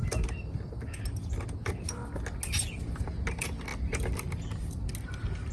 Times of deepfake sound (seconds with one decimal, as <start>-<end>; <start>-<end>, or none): 3.7-4.9